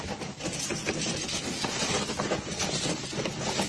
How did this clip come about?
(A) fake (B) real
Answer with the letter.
B